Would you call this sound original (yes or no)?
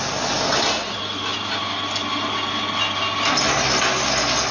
yes